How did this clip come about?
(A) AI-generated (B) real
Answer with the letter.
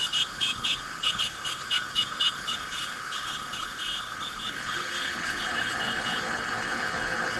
A